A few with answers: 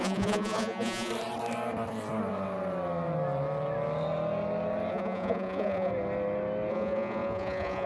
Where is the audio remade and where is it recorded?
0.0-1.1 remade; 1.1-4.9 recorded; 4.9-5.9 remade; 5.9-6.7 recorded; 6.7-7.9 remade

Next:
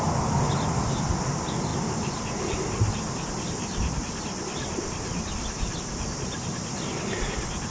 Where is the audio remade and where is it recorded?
0.0-7.7 recorded

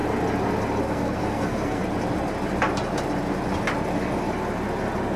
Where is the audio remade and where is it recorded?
0.0-0.8 recorded; 0.8-1.8 remade; 1.8-5.2 recorded